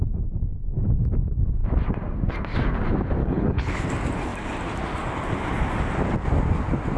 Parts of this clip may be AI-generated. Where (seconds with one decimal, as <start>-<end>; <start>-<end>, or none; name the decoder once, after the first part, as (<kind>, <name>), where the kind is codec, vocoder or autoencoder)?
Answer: 3.2-3.8 (codec, HILCodec)